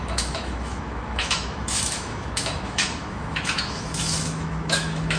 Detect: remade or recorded remade